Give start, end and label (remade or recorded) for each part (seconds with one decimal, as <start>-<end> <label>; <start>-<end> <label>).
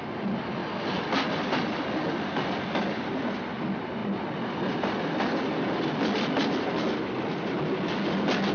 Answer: 0.0-8.5 recorded